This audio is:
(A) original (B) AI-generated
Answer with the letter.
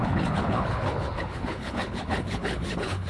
B